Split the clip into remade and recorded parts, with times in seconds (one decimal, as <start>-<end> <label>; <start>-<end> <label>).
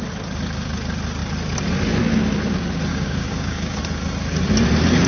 0.0-2.9 recorded; 2.9-3.8 remade; 3.8-5.1 recorded